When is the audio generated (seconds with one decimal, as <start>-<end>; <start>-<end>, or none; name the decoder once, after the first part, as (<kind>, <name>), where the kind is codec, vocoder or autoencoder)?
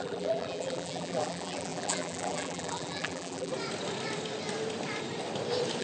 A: 0.0-3.5 (vocoder, BigVGAN v2)